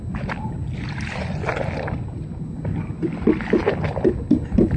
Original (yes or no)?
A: yes